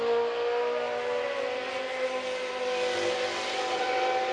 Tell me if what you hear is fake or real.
real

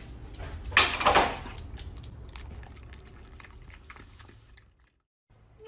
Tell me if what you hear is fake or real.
real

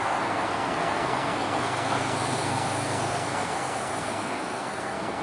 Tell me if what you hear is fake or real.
fake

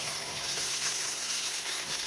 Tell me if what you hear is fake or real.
fake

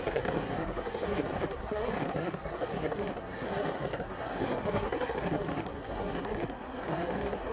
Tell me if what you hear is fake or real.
fake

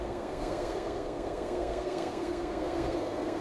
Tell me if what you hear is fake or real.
fake